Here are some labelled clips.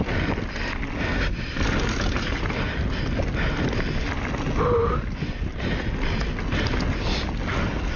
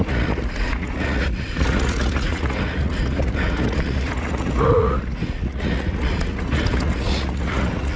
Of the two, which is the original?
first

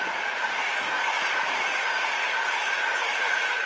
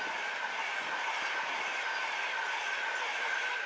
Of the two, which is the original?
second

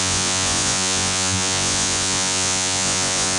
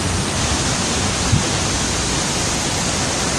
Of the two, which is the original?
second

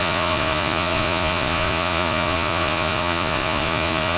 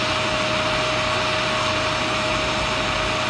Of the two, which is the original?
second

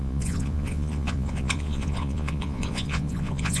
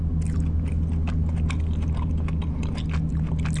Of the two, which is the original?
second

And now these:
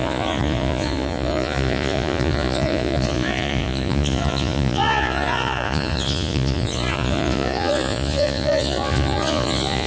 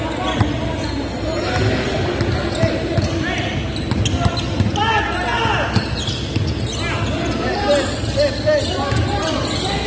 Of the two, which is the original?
second